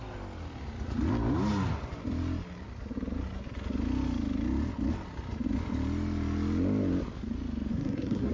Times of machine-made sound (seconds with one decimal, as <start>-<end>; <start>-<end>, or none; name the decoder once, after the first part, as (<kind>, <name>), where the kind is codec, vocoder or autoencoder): 7.7-8.3 (codec, SNAC)